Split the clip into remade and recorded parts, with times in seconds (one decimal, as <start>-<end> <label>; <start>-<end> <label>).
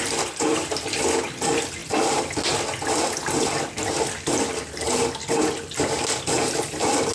0.0-7.1 recorded